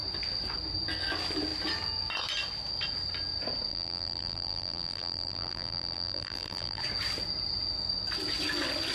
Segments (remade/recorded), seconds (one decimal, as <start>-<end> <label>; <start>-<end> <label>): 0.0-3.7 recorded; 3.7-6.8 remade; 6.8-8.9 recorded